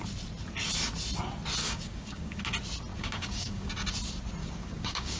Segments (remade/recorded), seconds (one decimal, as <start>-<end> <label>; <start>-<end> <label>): 0.0-1.6 recorded; 1.6-2.4 remade; 2.4-2.9 recorded; 2.9-3.7 remade; 3.7-4.4 recorded; 4.4-5.2 remade